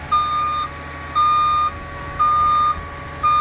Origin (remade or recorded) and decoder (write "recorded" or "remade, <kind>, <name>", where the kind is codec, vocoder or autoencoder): recorded